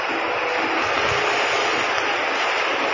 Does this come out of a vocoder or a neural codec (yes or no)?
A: no